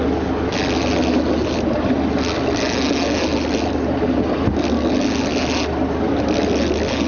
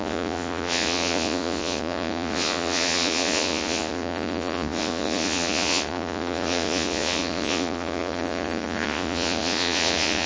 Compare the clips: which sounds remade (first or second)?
second